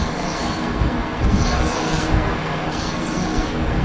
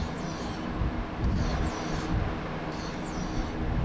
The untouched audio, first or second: second